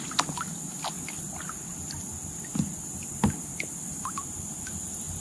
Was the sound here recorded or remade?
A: recorded